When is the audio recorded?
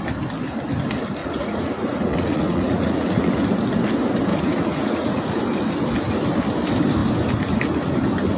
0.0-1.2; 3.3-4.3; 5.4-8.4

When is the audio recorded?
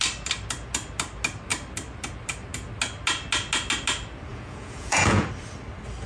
0.0-4.3; 5.3-6.1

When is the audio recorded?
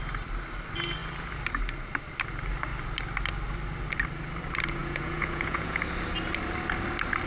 0.0-4.8; 5.8-7.3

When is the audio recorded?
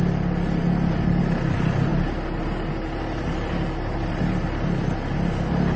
0.0-5.8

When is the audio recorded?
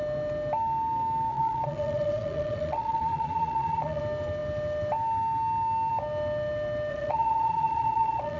0.0-1.3; 4.0-6.9